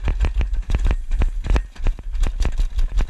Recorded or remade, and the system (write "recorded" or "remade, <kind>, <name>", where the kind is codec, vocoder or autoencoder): recorded